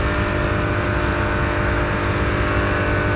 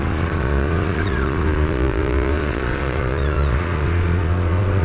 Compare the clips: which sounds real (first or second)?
first